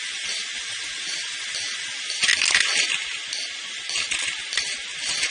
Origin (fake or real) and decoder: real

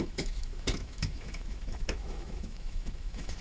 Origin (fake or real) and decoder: fake, autoencoder, DAC-VAE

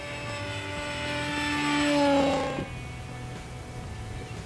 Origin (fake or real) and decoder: real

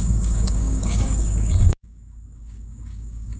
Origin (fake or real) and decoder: fake, codec, DAC